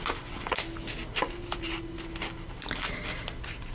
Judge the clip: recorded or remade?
recorded